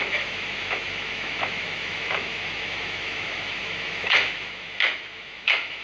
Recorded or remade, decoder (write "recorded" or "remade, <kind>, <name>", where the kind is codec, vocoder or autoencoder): remade, autoencoder, DAC-VAE